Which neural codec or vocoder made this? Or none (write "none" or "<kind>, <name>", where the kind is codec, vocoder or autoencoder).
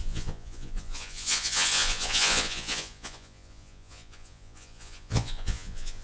vocoder, Vocos